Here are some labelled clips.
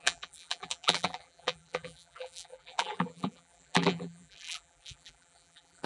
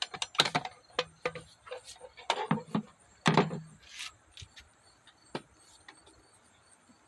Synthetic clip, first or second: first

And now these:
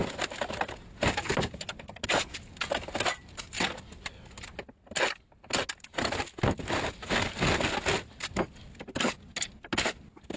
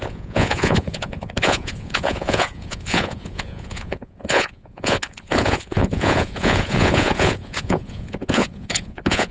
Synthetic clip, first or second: second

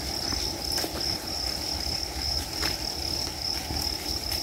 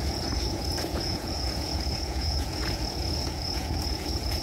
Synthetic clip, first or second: second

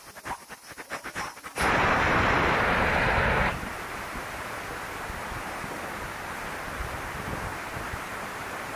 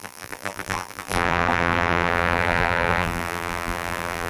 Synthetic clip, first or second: second